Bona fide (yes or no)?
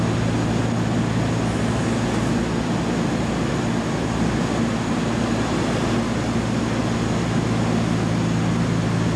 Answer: yes